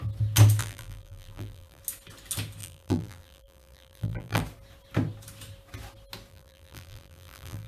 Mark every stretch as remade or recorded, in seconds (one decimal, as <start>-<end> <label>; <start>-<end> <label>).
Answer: 0.0-0.6 recorded; 0.6-1.8 remade; 1.8-2.6 recorded; 2.6-4.4 remade; 4.4-6.3 recorded; 6.3-7.7 remade